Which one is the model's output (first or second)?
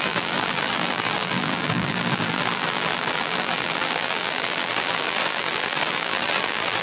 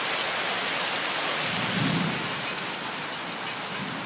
first